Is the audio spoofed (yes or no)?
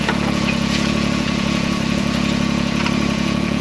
yes